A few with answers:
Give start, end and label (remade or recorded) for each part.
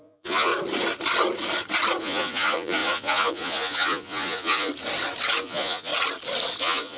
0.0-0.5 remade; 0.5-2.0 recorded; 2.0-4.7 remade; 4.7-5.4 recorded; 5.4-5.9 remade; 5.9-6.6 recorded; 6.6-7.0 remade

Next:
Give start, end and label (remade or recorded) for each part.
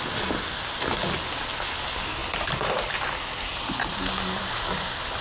0.0-5.2 recorded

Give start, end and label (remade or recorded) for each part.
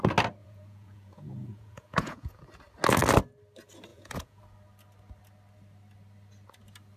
0.0-0.4 recorded; 0.4-2.4 remade; 2.4-3.9 recorded; 3.9-4.4 remade; 4.4-7.0 recorded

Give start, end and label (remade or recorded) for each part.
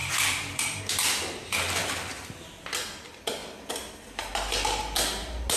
0.0-0.8 remade; 0.8-1.8 recorded; 1.8-2.3 remade; 2.3-5.6 recorded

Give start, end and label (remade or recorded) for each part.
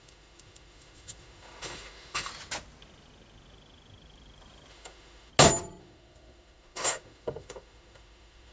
0.0-2.3 remade; 2.3-4.7 recorded; 4.7-5.3 remade; 5.3-5.8 recorded; 5.8-8.5 remade